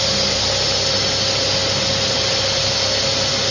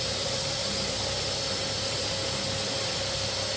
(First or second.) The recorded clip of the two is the first